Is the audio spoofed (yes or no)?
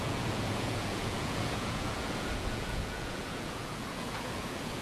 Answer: yes